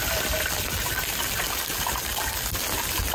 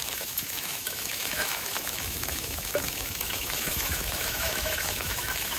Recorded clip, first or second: first